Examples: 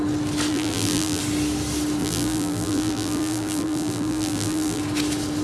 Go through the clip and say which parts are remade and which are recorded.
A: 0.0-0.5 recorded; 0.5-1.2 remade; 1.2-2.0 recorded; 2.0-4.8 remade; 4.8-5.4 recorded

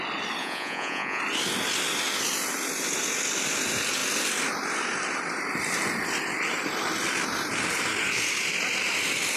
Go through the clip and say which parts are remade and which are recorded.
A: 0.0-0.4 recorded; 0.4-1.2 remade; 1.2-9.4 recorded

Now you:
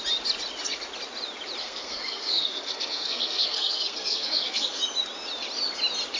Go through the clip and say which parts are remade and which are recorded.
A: 0.0-1.6 recorded; 1.6-4.8 remade; 4.8-6.2 recorded